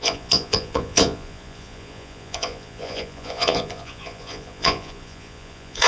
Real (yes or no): no